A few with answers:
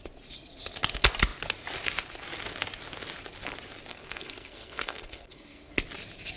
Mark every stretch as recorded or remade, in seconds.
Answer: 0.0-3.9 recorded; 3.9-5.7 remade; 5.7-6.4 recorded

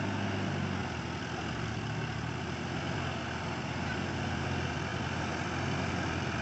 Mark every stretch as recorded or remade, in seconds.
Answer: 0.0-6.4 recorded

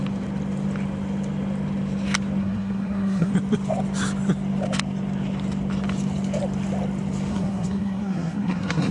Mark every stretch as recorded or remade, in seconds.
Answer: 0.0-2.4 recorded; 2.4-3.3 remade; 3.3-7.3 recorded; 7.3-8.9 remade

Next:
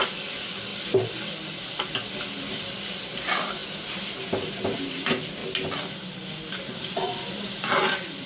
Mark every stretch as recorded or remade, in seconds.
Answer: 0.0-5.4 remade; 5.4-6.5 recorded; 6.5-8.3 remade

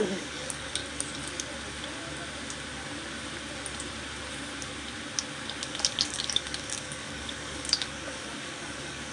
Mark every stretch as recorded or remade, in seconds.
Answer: 0.0-0.8 remade; 0.8-5.6 recorded; 5.6-9.1 remade

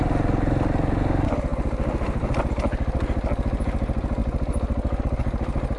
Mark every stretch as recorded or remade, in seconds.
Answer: 0.0-5.8 recorded